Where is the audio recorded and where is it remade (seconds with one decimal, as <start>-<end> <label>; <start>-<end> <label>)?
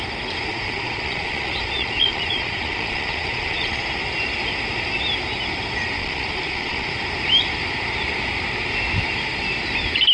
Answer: 0.0-0.5 recorded; 0.5-3.8 remade; 3.8-6.0 recorded; 6.0-6.9 remade; 6.9-10.1 recorded